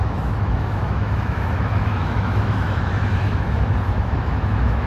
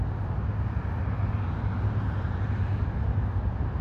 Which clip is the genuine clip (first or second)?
second